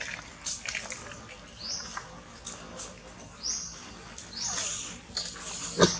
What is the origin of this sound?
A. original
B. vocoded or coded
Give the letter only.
A